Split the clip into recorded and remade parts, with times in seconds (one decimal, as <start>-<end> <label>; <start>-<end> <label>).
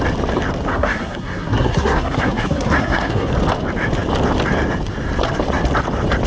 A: 0.0-0.7 recorded; 0.7-3.3 remade; 3.3-6.3 recorded